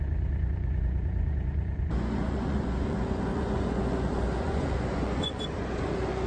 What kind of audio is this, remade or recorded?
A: remade